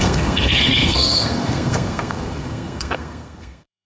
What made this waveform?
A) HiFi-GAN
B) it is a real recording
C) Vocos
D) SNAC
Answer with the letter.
D